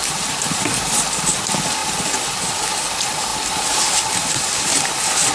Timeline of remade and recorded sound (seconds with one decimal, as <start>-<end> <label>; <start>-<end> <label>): 0.0-4.2 recorded; 4.2-5.3 remade